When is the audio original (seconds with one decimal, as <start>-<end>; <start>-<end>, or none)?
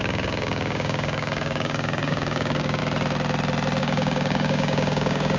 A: 2.8-3.8